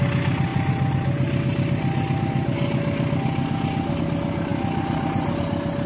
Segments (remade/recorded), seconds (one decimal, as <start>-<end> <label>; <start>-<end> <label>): 0.0-5.9 recorded